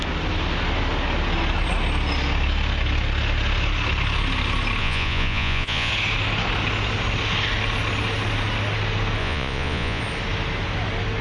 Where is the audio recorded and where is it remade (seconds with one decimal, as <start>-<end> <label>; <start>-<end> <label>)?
0.0-4.8 recorded; 4.8-5.9 remade; 5.9-9.2 recorded; 9.2-10.0 remade; 10.0-11.2 recorded